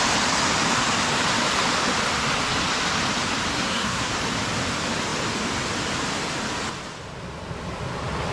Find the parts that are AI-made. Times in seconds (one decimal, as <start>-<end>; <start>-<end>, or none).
3.5-4.1